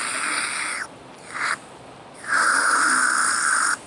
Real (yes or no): yes